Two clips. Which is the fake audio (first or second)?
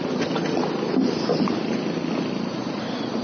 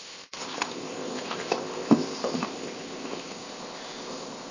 second